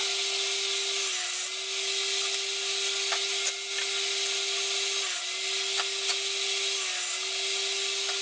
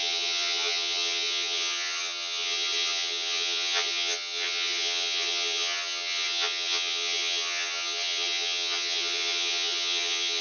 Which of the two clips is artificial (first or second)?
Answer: second